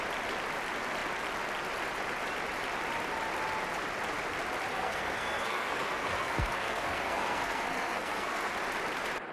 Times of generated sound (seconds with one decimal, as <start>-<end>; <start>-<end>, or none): 4.7-8.5